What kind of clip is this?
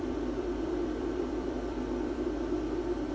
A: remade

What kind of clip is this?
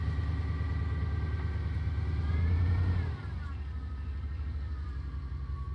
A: recorded